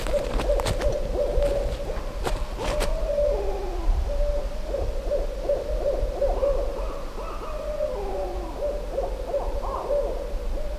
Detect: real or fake real